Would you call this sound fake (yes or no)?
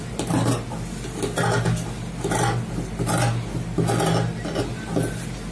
no